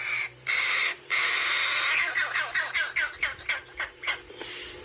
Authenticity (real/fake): real